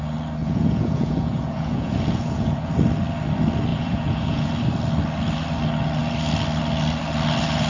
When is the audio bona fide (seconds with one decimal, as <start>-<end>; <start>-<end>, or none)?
0.0-0.4; 2.7-3.7; 4.5-7.7